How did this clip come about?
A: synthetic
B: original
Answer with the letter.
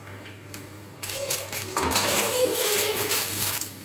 A